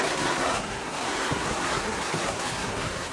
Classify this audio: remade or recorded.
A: remade